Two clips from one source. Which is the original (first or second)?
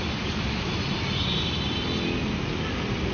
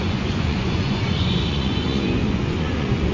first